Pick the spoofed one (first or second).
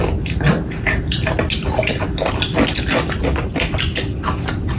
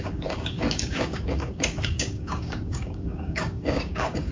second